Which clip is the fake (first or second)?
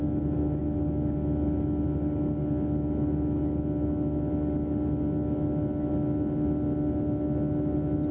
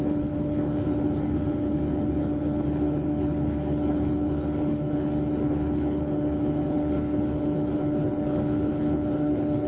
second